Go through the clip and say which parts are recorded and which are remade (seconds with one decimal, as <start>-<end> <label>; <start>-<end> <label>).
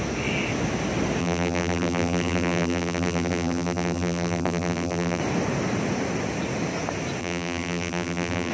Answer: 0.0-1.2 recorded; 1.2-5.2 remade; 5.2-7.2 recorded; 7.2-8.5 remade